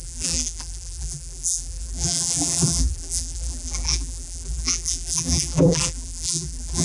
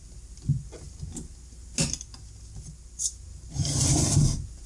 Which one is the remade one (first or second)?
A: first